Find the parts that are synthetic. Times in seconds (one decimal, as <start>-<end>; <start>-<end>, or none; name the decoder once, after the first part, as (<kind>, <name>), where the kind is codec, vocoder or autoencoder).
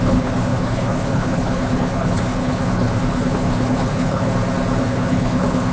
0.0-4.3 (codec, HILCodec); 4.8-5.7